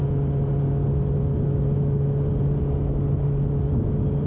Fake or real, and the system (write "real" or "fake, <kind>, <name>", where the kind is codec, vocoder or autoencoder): real